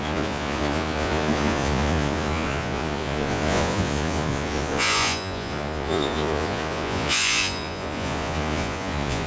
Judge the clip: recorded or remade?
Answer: remade